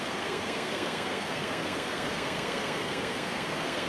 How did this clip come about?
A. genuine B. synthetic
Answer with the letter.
B